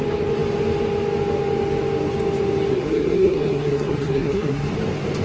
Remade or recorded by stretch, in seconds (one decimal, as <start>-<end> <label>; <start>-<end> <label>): 0.0-2.7 recorded; 2.7-4.7 remade; 4.7-5.2 recorded